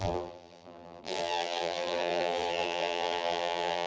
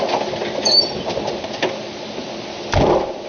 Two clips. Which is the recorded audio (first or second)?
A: second